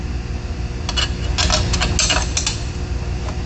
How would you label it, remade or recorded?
recorded